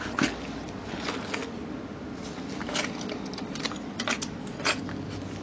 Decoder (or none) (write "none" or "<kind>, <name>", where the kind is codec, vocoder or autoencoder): none